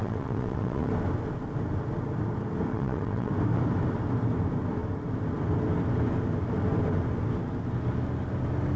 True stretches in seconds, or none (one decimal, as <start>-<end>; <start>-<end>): 0.9-2.7; 3.3-8.8